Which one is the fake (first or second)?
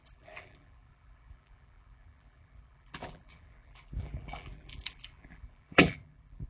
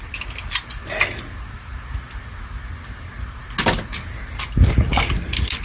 first